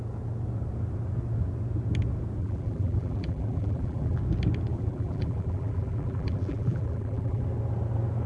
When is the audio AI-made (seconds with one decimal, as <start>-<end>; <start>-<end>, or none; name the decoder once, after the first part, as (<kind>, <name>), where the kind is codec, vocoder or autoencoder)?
2.4-4.2 (vocoder, BigVGAN v2); 4.7-7.4